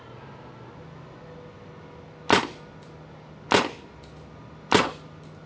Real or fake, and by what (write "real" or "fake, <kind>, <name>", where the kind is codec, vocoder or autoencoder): real